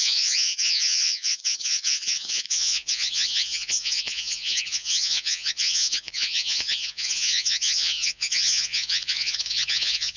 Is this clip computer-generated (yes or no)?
yes